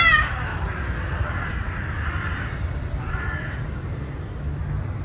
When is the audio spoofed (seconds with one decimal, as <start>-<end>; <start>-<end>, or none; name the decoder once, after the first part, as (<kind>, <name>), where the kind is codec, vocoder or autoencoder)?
0.5-1.6 (vocoder, BigVGAN v2)